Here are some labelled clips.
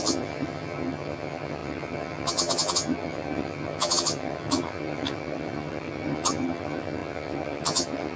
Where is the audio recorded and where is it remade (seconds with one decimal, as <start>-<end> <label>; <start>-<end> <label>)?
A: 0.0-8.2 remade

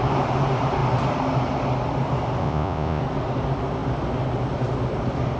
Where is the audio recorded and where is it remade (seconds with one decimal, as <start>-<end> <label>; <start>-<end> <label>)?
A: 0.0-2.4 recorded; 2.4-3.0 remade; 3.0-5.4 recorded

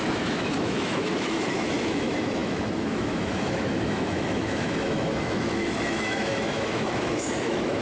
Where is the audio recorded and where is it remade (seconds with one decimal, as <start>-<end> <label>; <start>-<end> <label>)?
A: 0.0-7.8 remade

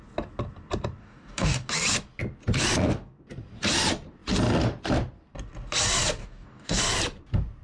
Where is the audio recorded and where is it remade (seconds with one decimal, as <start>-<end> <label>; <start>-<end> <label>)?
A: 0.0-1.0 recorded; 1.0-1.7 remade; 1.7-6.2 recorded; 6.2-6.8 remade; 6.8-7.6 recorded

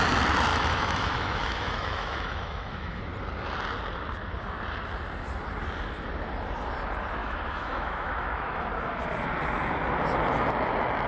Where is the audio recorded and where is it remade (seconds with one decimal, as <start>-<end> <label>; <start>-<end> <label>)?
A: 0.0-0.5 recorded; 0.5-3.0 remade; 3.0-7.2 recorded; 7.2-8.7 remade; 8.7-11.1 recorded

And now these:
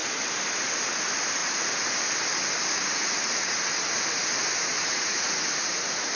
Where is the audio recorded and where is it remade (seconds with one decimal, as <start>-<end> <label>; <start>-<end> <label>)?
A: 0.0-1.4 recorded; 1.4-1.9 remade; 1.9-2.8 recorded; 2.8-3.6 remade; 3.6-4.8 recorded; 4.8-6.2 remade

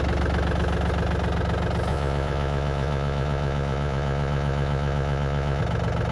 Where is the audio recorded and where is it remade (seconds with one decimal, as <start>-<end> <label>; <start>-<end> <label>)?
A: 0.0-1.9 recorded; 1.9-5.6 remade; 5.6-6.1 recorded